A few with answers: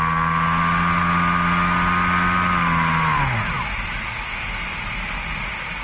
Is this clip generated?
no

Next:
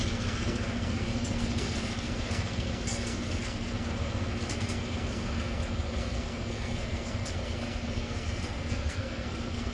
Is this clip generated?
yes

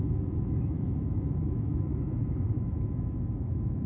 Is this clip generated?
yes